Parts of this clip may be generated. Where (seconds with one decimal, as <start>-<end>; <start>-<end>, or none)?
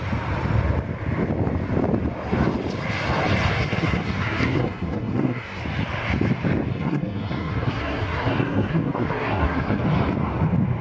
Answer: 3.5-5.6; 6.7-9.8